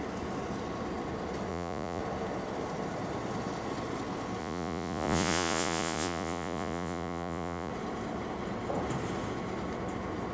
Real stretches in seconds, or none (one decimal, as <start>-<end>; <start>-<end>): 0.0-1.5; 2.0-4.4; 7.7-10.3